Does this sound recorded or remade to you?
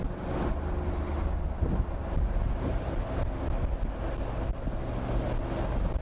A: recorded